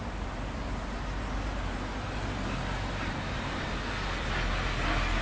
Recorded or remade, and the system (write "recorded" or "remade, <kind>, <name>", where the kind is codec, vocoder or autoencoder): recorded